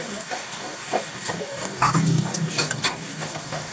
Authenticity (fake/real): fake